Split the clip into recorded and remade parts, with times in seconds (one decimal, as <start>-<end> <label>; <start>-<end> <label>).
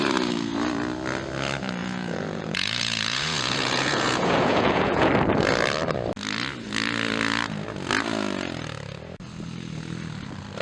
0.0-1.8 recorded; 1.8-5.1 remade; 5.1-10.6 recorded